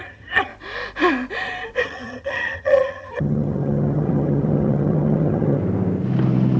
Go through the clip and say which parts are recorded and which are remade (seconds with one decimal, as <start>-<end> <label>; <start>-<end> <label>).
0.0-0.5 remade; 0.5-1.8 recorded; 1.8-5.6 remade; 5.6-6.6 recorded